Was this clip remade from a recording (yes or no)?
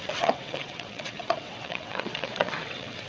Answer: yes